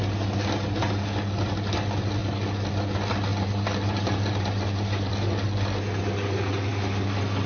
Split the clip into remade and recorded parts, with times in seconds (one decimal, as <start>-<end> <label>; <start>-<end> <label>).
0.0-3.3 recorded; 3.3-5.1 remade; 5.1-7.5 recorded